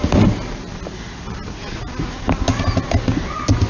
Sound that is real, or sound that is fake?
real